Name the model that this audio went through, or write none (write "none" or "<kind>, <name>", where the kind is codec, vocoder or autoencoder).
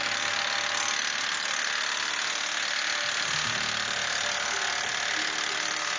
none